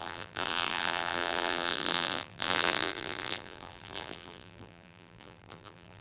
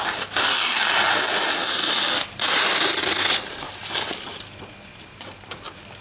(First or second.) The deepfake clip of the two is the first